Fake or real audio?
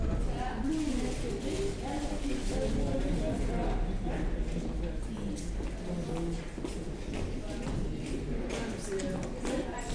real